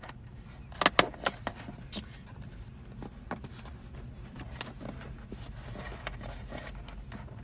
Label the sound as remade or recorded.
recorded